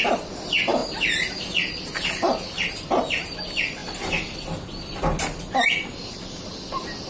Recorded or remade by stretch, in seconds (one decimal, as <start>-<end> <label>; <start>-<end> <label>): 0.0-7.1 recorded